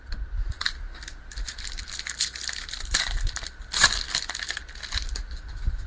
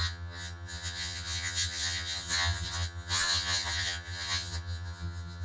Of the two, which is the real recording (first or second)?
first